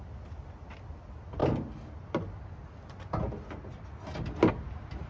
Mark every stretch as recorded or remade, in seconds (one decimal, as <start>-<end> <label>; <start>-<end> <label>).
0.0-5.1 recorded